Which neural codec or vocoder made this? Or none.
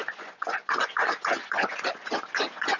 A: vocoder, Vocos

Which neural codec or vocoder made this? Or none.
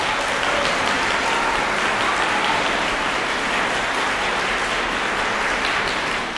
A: none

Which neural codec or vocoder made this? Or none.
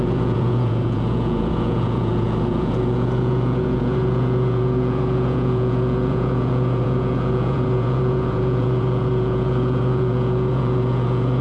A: vocoder, Vocos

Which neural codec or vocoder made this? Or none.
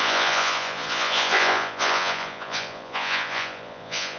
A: vocoder, Vocos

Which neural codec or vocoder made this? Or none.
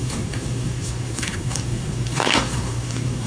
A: codec, SNAC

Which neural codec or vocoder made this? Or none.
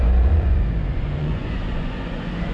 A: vocoder, Vocos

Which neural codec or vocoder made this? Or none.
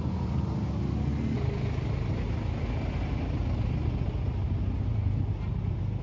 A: none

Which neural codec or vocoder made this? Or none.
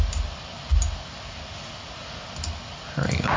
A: none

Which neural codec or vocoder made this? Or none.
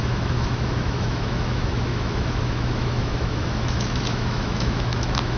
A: autoencoder, DAC-VAE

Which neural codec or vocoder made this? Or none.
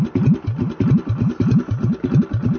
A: none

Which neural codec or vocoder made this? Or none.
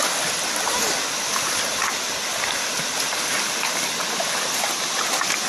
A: none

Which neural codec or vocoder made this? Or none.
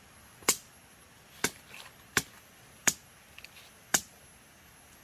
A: none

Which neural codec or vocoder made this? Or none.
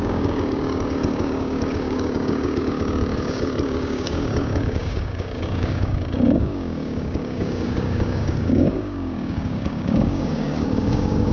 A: codec, DAC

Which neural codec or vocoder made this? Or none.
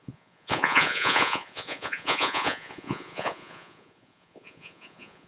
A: vocoder, Vocos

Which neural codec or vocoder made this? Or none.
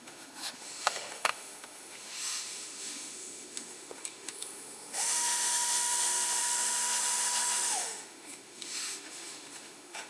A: autoencoder, DAC-VAE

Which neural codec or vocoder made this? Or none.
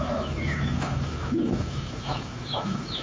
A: autoencoder, DAC-VAE